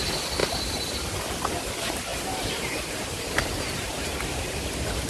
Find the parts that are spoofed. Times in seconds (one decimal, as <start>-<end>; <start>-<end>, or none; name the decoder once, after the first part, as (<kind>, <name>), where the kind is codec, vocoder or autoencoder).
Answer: 2.1-4.1 (vocoder, BigVGAN v2)